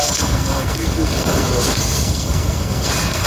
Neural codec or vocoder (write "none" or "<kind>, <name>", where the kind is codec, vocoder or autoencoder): codec, SNAC